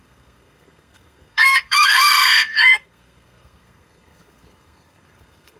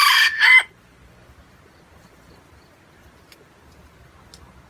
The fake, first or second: first